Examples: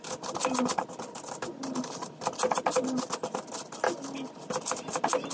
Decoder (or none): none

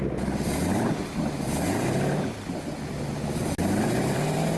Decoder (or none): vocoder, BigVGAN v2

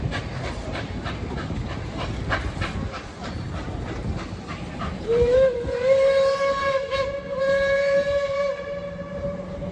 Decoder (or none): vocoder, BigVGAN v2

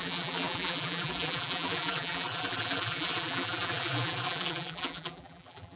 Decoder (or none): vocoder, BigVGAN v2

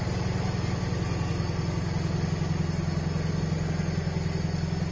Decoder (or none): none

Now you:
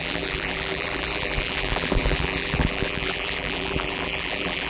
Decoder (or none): vocoder, BigVGAN v2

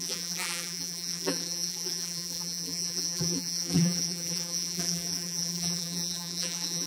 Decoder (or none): vocoder, BigVGAN v2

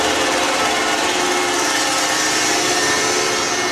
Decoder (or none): vocoder, BigVGAN v2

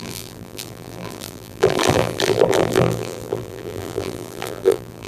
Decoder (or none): vocoder, BigVGAN v2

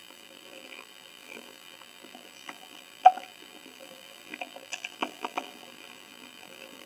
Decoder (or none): vocoder, BigVGAN v2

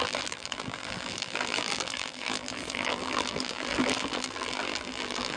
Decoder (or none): vocoder, BigVGAN v2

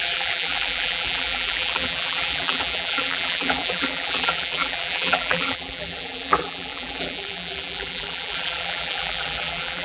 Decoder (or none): vocoder, BigVGAN v2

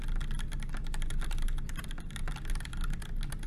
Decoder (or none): none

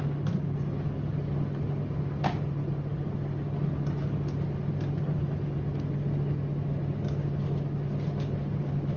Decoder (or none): none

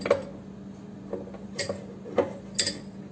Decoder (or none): none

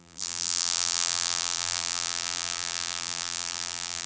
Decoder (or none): vocoder, BigVGAN v2